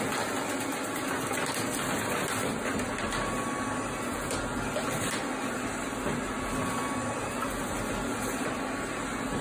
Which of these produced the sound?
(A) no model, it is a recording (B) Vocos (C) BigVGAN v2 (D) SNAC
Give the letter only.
A